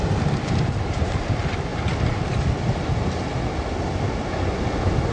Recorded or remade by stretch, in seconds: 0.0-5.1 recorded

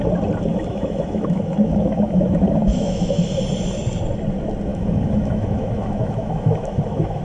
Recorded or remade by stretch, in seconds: 0.0-0.5 recorded; 0.5-3.3 remade; 3.3-4.7 recorded; 4.7-7.2 remade

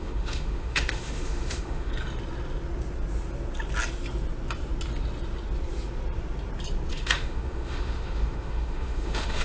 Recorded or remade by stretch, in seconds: 0.0-1.9 remade; 1.9-6.9 recorded; 6.9-9.4 remade

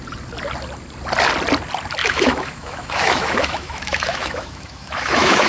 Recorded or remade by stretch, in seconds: 0.0-2.0 recorded; 2.0-5.5 remade

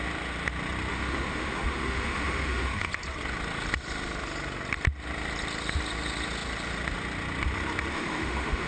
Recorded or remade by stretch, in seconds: 0.0-0.9 recorded; 0.9-2.9 remade; 2.9-7.9 recorded; 7.9-8.7 remade

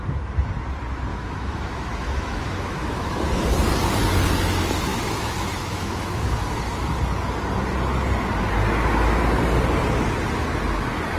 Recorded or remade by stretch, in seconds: 0.0-1.1 recorded; 1.1-3.2 remade; 3.2-4.9 recorded; 4.9-7.0 remade; 7.0-11.2 recorded